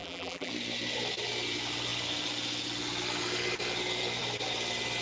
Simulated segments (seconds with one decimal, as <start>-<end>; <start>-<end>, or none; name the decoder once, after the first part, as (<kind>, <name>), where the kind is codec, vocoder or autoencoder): 0.0-0.5 (vocoder, BigVGAN v2)